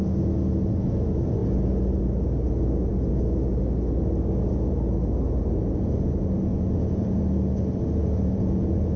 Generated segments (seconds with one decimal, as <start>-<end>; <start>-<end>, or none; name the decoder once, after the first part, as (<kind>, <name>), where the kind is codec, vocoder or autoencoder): 6.5-7.2 (vocoder, Vocos); 8.0-9.0